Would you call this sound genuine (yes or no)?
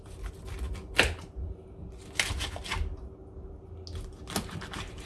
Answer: yes